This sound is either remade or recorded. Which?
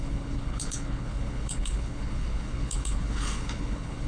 remade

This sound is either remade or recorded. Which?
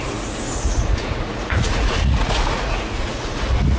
remade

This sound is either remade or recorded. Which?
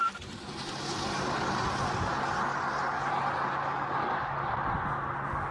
recorded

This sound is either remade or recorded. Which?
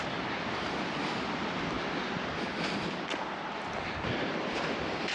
remade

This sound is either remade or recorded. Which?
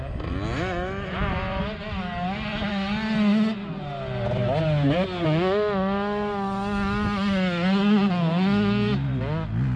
recorded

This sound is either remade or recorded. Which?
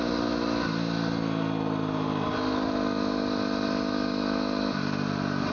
recorded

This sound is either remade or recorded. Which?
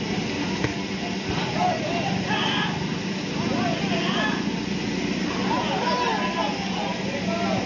recorded